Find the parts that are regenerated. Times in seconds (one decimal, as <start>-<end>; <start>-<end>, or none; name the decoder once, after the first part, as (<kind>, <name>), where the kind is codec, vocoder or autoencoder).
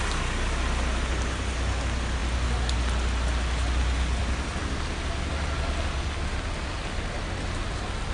none